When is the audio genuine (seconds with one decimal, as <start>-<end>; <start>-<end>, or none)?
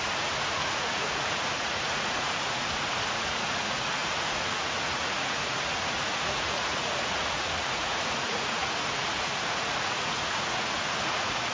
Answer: none